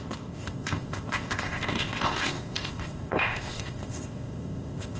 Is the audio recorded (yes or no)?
no